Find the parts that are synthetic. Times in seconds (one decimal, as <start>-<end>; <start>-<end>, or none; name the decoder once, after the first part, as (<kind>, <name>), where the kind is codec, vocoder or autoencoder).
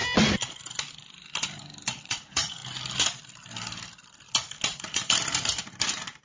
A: 2.0-2.6 (vocoder, Vocos)